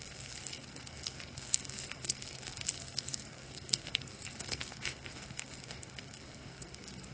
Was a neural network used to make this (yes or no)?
yes